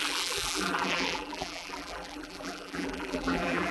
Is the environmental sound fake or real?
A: fake